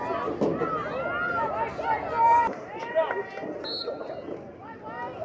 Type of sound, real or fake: real